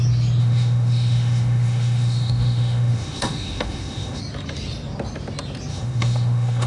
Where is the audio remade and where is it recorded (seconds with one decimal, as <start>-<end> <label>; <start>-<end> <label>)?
0.0-0.4 recorded; 0.4-4.2 remade; 4.2-5.7 recorded; 5.7-6.7 remade